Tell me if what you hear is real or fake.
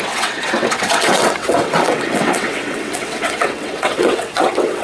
fake